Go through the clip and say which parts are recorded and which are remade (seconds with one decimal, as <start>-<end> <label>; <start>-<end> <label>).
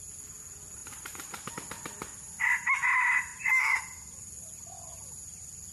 0.0-0.8 recorded; 0.8-1.5 remade; 1.5-3.3 recorded; 3.3-3.8 remade; 3.8-5.7 recorded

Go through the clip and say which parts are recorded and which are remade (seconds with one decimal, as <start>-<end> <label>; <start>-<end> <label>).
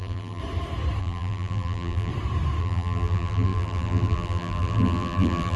0.0-0.4 remade; 0.4-1.0 recorded; 1.0-2.1 remade; 2.1-2.6 recorded; 2.6-5.6 remade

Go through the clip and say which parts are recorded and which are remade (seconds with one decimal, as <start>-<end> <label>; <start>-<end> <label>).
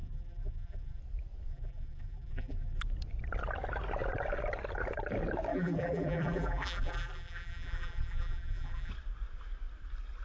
0.0-1.0 remade; 1.0-1.5 recorded; 1.5-2.8 remade; 2.8-5.5 recorded; 5.5-8.9 remade; 8.9-10.2 recorded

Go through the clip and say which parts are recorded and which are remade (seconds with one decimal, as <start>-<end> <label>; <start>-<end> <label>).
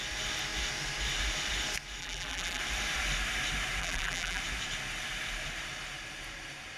0.0-2.0 recorded; 2.0-2.6 remade; 2.6-3.8 recorded; 3.8-4.4 remade; 4.4-6.8 recorded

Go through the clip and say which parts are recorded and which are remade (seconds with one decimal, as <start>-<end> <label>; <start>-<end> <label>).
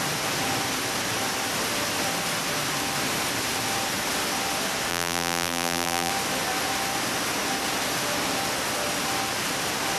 0.0-4.9 recorded; 4.9-6.1 remade; 6.1-10.0 recorded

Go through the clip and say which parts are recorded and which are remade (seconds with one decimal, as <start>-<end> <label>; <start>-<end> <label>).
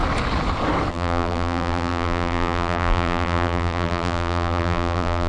0.0-0.9 recorded; 0.9-5.3 remade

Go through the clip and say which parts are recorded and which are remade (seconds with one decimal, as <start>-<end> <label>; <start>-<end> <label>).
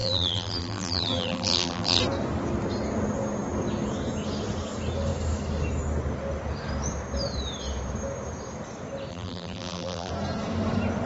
0.0-2.0 remade; 2.0-9.1 recorded; 9.1-10.1 remade; 10.1-11.1 recorded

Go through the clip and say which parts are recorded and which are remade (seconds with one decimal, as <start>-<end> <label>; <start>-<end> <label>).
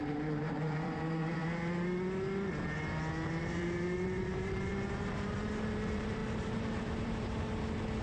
0.0-1.4 remade; 1.4-3.4 recorded; 3.4-8.0 remade